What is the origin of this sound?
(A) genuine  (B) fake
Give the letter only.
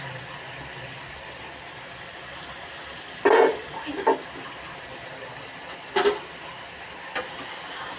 A